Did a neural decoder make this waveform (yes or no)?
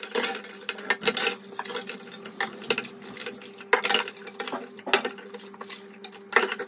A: no